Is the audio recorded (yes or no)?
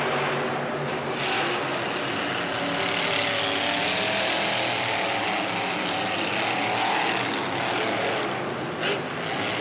yes